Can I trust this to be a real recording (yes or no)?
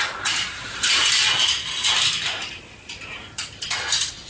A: yes